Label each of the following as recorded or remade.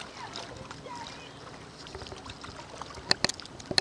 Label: recorded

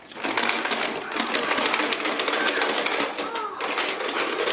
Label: recorded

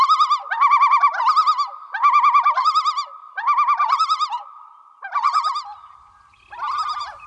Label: remade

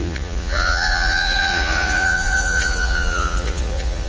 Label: remade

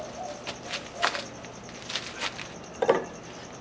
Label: recorded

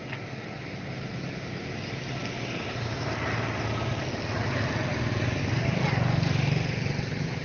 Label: recorded